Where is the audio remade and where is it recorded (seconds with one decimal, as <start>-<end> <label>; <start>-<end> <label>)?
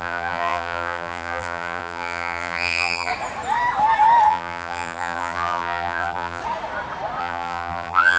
0.0-3.1 remade; 3.1-4.3 recorded; 4.3-6.4 remade; 6.4-7.2 recorded; 7.2-8.2 remade